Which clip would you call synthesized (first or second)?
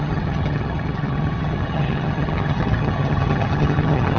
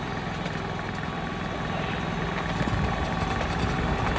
first